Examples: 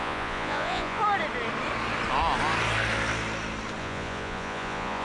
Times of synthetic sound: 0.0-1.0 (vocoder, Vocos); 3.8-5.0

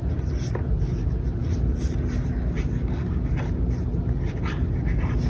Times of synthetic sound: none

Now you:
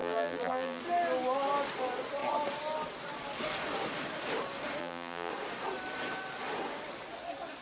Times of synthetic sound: 0.0-0.8 (vocoder, BigVGAN v2); 4.8-5.3

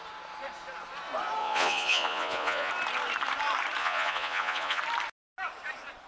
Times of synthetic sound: 1.4-2.7 (vocoder, Vocos); 3.8-4.8

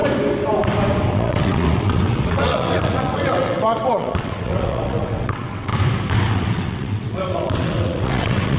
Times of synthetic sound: 1.1-5.7 (vocoder, WaveNeXt); 6.3-8.6